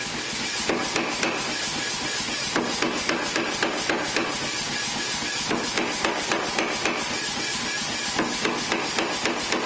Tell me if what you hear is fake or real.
real